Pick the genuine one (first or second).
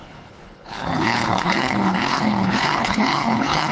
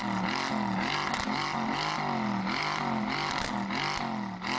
second